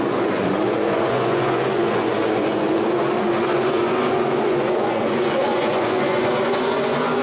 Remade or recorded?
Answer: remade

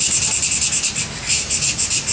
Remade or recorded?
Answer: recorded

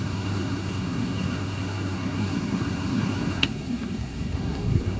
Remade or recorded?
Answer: remade